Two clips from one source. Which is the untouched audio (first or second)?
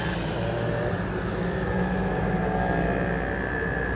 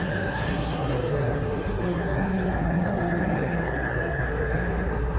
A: first